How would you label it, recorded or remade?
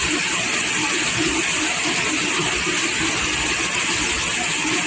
recorded